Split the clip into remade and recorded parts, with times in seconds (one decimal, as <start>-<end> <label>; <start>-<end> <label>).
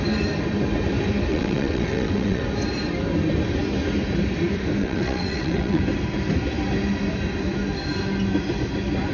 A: 0.0-1.3 recorded; 1.3-2.4 remade; 2.4-4.8 recorded; 4.8-5.8 remade; 5.8-9.1 recorded